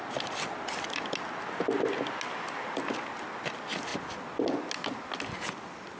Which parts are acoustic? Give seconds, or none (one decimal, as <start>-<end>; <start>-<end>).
0.0-6.0

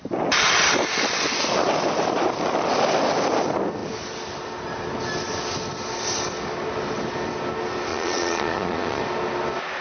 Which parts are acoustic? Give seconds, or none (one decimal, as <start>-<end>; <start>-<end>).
0.0-7.9; 9.0-9.8

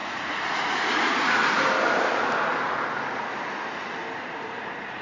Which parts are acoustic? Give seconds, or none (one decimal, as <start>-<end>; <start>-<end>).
1.4-4.4

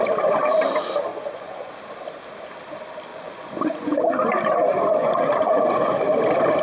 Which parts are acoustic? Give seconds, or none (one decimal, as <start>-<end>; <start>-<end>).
0.0-1.1; 1.7-3.1; 4.0-5.0; 6.0-6.6

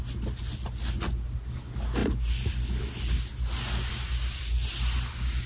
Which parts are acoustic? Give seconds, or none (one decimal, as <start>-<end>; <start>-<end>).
0.0-5.5